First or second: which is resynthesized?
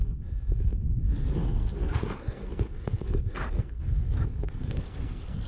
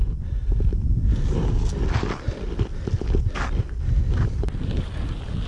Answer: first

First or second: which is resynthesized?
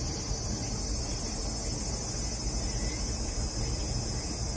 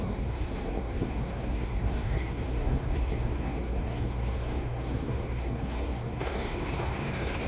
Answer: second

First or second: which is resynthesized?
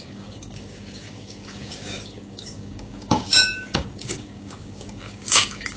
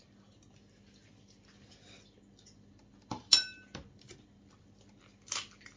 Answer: first